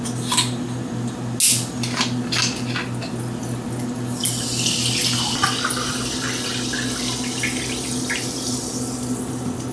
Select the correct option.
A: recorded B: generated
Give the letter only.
A